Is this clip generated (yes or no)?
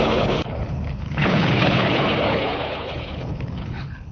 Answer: yes